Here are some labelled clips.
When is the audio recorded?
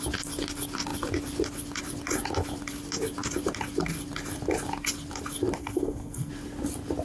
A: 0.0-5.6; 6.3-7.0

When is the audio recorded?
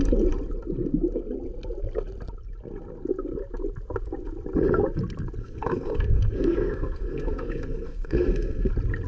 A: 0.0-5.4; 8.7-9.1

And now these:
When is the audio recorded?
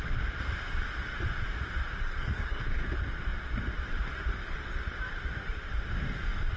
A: 0.0-2.0; 2.6-6.6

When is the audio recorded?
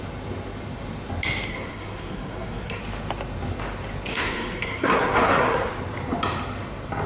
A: 0.0-1.5; 2.8-4.1; 5.7-7.1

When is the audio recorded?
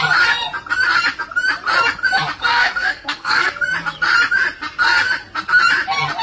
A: 0.0-2.5; 3.5-6.2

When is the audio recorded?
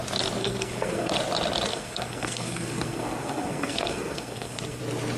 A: 0.0-0.4; 1.1-1.7; 4.8-5.2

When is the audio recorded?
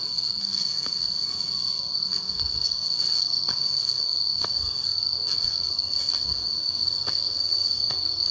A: none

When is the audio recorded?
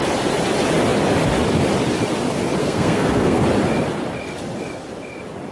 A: 0.0-2.6; 3.4-5.5